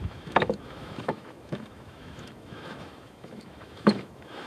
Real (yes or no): no